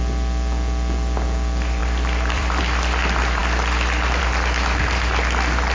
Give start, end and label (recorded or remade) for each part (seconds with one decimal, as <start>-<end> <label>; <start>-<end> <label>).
0.0-1.8 recorded; 1.8-2.6 remade; 2.6-5.7 recorded